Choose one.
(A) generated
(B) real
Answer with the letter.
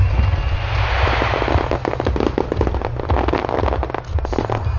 B